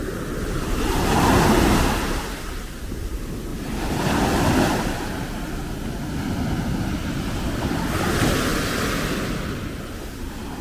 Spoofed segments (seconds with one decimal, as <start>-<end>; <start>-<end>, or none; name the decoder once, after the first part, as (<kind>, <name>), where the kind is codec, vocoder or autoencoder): none